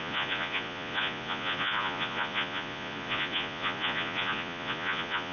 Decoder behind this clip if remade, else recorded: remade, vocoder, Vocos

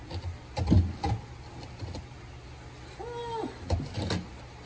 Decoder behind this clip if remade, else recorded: recorded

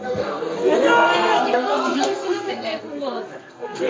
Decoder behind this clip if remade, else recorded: remade, codec, SNAC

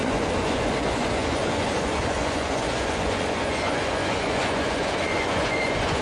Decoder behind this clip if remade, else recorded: remade, vocoder, Vocos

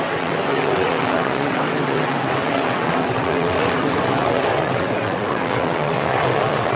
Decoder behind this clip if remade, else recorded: remade, vocoder, WaveNeXt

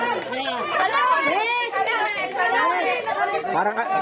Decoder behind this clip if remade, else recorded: recorded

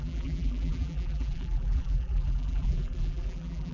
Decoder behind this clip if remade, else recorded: remade, vocoder, BigVGAN v2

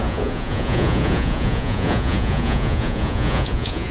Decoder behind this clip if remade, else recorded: remade, vocoder, Vocos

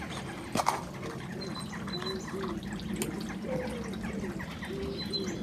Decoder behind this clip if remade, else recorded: recorded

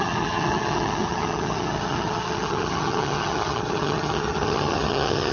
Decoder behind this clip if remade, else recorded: remade, vocoder, HiFi-GAN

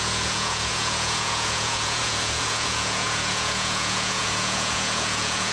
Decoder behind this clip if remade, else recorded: remade, vocoder, Vocos